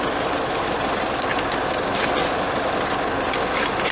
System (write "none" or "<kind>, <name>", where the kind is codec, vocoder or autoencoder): vocoder, BigVGAN v2